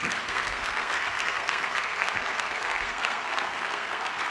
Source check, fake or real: fake